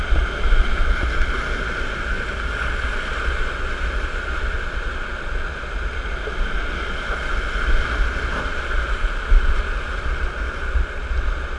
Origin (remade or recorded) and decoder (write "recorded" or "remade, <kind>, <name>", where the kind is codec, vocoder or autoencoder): recorded